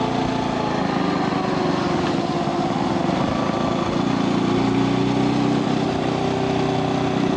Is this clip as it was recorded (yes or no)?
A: yes